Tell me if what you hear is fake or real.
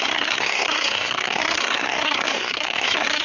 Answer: fake